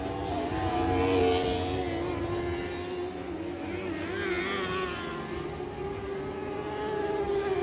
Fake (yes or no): no